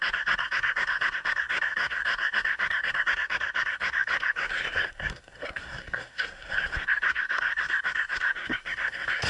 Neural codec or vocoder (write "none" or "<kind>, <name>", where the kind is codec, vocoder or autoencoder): codec, SNAC